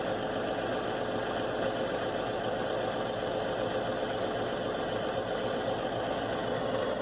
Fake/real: real